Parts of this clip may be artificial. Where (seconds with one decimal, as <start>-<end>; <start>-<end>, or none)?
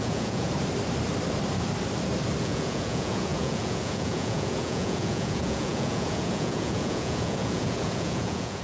0.0-0.5; 2.4-8.6